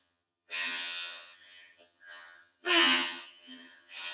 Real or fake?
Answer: fake